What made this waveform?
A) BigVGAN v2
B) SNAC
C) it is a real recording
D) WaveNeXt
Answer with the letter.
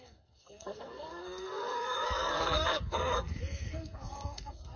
B